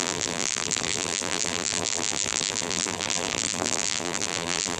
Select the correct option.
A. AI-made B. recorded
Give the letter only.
A